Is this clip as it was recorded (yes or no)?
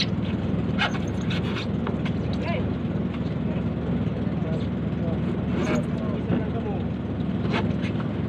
yes